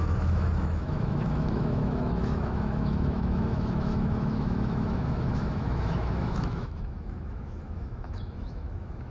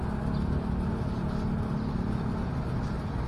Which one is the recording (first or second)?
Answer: second